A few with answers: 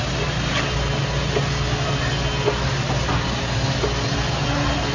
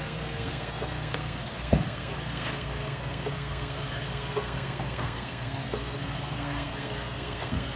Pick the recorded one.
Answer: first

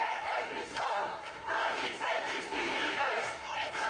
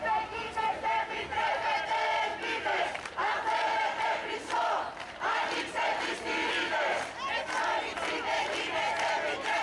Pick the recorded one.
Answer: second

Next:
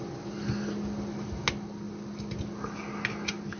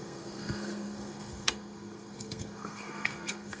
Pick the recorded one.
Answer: first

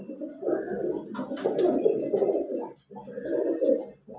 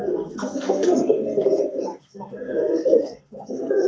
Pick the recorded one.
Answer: first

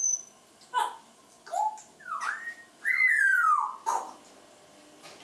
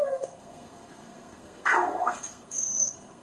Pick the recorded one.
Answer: first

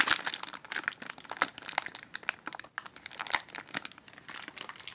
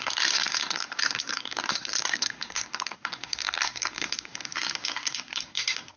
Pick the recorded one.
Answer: first